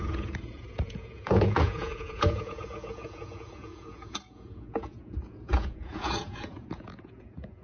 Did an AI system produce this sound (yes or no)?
yes